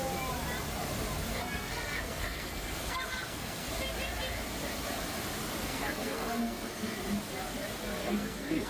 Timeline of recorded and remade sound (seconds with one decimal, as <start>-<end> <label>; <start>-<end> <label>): 0.0-1.3 recorded; 1.3-3.7 remade; 3.7-5.6 recorded; 5.6-7.0 remade; 7.0-8.0 recorded; 8.0-8.7 remade